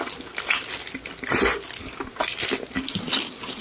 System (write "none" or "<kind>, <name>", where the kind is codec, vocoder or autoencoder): none